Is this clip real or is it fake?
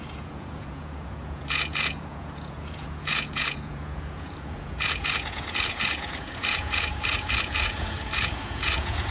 fake